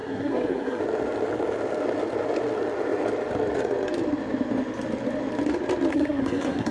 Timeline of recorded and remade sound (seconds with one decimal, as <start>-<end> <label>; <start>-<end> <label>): 0.0-0.8 remade; 0.8-5.9 recorded; 5.9-6.7 remade